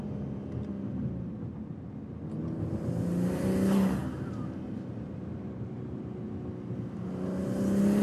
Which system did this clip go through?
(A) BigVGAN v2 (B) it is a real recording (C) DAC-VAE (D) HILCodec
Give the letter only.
B